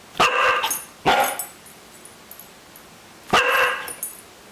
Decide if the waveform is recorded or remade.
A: recorded